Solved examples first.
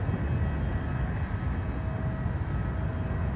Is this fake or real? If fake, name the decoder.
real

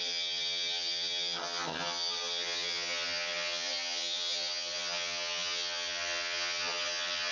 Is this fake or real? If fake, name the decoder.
fake, vocoder, HiFi-GAN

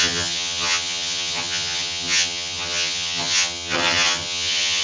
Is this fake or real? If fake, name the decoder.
fake, vocoder, HiFi-GAN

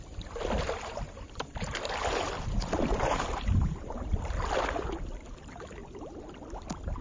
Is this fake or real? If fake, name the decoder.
real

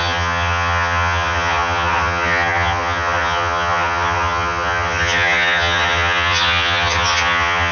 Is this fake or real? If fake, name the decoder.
fake, vocoder, HiFi-GAN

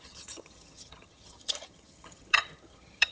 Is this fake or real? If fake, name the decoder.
fake, vocoder, HiFi-GAN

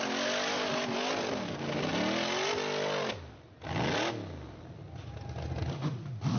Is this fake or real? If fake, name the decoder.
real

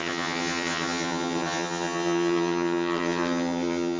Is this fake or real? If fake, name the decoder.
fake, vocoder, HiFi-GAN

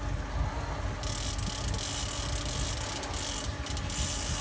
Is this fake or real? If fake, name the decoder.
real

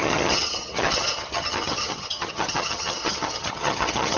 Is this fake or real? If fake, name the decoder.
fake, vocoder, HiFi-GAN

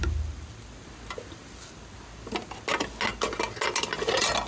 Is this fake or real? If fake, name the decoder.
real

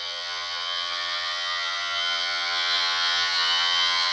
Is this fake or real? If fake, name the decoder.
fake, vocoder, HiFi-GAN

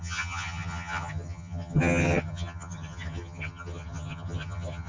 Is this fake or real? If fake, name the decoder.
fake, vocoder, HiFi-GAN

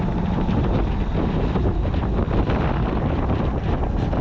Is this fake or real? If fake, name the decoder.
real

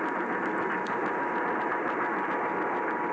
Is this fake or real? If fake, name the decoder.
real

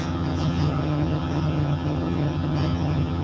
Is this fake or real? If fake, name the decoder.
fake, vocoder, HiFi-GAN